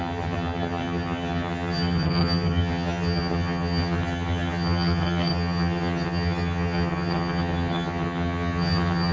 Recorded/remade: remade